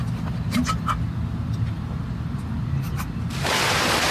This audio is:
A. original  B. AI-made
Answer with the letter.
A